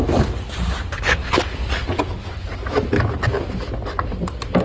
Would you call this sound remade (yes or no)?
no